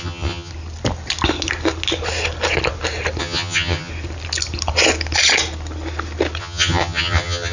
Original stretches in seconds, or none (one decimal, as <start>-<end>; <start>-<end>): 0.5-3.2; 3.9-6.4